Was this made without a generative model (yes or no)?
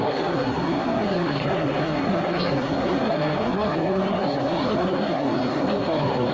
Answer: no